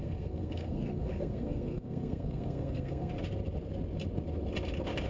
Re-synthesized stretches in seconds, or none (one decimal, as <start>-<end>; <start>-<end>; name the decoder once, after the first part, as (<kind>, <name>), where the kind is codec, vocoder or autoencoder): 0.0-3.1 (codec, SNAC)